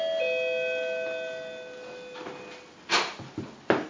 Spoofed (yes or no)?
no